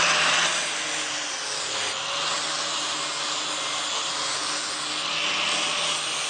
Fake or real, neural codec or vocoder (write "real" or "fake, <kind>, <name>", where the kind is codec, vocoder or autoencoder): real